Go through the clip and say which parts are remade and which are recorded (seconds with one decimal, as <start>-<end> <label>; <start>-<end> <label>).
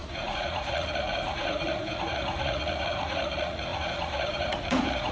0.0-5.1 remade